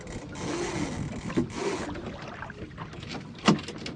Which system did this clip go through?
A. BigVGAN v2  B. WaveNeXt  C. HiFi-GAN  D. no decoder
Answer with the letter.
D